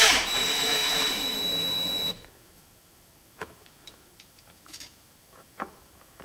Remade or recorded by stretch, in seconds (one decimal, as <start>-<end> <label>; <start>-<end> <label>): 0.0-6.2 remade